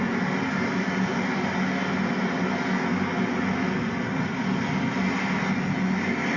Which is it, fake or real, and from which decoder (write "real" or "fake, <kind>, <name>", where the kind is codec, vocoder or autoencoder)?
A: real